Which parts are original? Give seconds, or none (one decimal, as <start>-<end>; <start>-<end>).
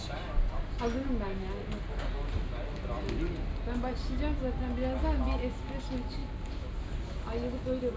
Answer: 0.0-8.0